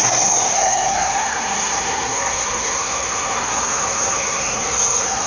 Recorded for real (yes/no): no